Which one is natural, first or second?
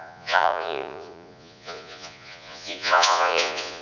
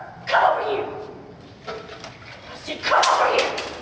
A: second